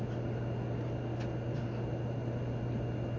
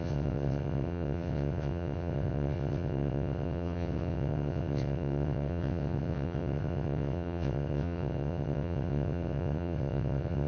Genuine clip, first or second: first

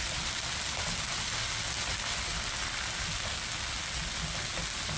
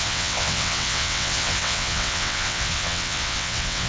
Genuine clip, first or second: first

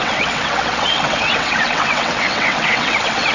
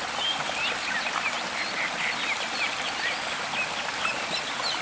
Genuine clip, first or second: second